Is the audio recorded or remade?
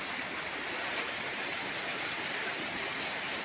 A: remade